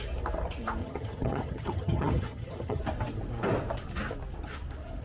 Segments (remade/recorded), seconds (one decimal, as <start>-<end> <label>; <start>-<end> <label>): 0.0-0.8 recorded; 0.8-2.8 remade; 2.8-5.0 recorded